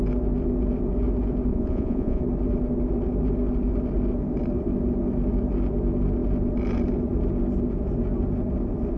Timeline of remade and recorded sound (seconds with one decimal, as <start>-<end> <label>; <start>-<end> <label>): 0.0-1.5 recorded; 1.5-2.2 remade; 2.2-9.0 recorded